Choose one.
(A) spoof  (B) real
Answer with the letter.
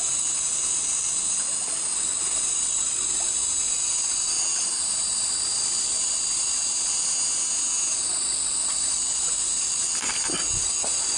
B